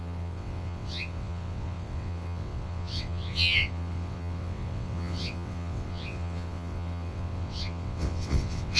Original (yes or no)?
no